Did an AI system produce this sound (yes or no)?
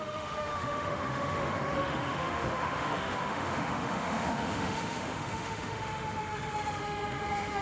yes